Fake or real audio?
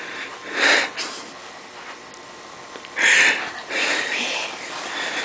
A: real